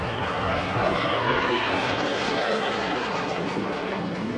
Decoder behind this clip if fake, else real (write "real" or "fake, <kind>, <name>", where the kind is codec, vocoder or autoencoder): fake, codec, SNAC